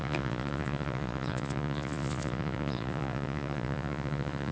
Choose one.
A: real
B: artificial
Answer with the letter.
B